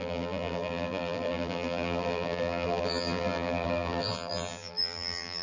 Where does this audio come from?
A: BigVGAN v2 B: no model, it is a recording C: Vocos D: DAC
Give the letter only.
A